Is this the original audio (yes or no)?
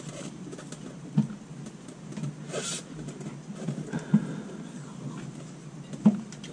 yes